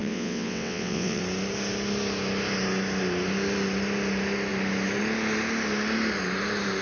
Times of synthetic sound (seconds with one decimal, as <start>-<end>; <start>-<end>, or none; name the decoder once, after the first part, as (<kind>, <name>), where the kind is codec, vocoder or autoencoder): 0.0-1.2 (vocoder, WaveNeXt)